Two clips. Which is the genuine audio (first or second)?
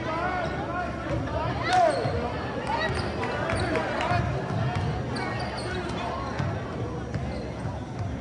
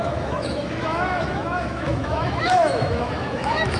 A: first